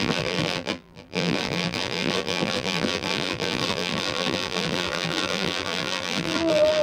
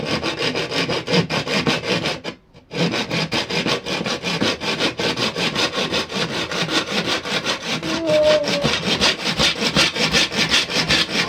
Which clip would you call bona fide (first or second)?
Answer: second